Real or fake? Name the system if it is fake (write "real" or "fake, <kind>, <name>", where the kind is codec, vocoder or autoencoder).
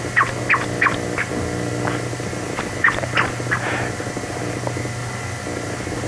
real